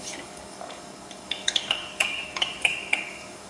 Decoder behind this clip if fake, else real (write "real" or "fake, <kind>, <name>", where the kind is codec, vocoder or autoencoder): fake, codec, DAC